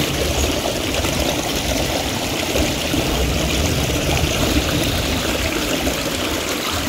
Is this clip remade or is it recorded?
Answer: remade